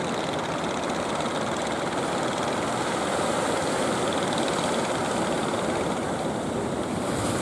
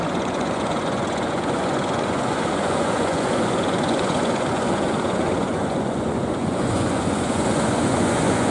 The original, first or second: first